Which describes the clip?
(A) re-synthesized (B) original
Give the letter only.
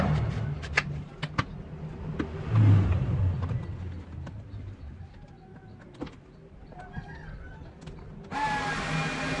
B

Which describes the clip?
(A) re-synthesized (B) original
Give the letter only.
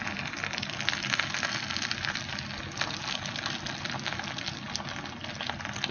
B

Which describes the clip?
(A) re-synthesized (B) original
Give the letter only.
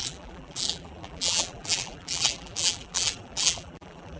A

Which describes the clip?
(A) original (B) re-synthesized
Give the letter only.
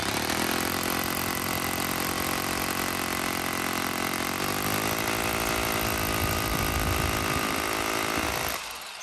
A